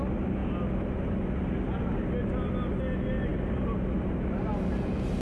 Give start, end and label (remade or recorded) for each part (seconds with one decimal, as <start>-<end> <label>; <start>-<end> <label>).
0.0-5.2 recorded